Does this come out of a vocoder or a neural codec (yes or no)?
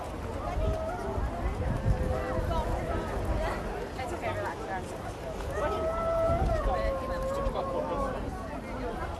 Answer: no